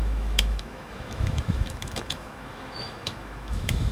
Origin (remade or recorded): remade